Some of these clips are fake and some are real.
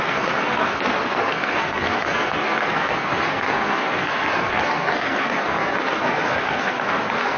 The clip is fake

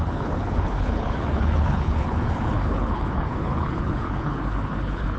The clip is fake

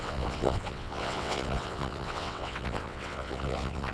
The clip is fake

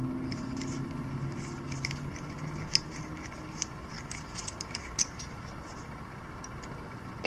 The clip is real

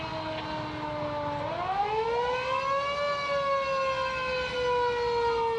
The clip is real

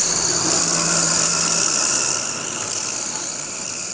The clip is real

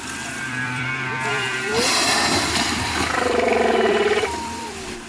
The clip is fake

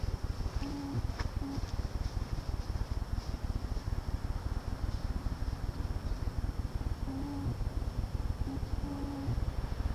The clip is real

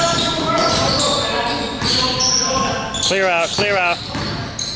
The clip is real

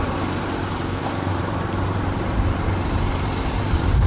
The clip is fake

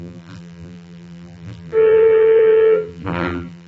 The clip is fake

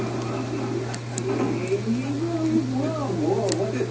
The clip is real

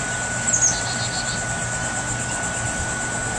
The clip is real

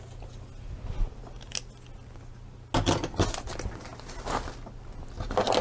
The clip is real